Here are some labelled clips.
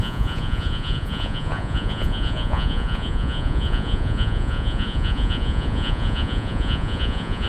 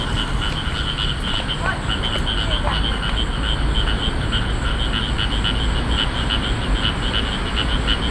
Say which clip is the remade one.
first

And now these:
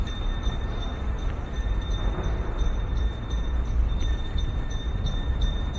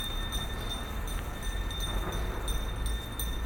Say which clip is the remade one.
first